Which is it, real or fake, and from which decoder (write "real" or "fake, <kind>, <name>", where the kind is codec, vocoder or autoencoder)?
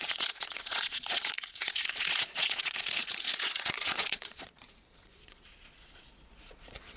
fake, vocoder, Vocos